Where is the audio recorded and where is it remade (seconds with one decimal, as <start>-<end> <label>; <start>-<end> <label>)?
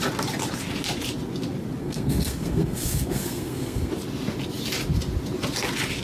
0.0-1.8 recorded; 1.8-3.9 remade; 3.9-6.0 recorded